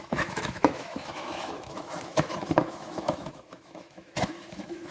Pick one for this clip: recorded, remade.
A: remade